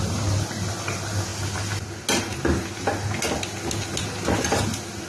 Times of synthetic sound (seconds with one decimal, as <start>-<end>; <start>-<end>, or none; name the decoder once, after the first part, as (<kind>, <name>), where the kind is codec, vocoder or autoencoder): none